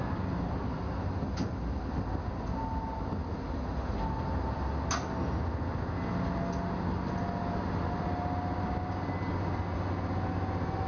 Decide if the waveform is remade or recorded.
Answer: recorded